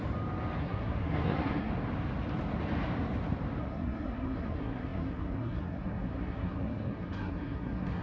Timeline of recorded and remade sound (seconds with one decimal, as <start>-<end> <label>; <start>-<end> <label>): 0.0-0.6 recorded; 0.6-1.7 remade; 1.7-3.6 recorded; 3.6-8.0 remade